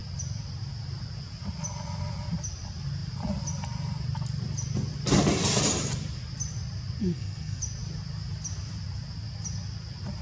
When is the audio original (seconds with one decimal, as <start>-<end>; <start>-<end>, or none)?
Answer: 0.0-7.0; 7.6-10.2